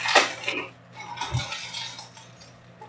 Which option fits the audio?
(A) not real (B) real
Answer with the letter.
B